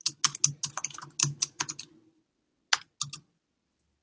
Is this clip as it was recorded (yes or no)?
yes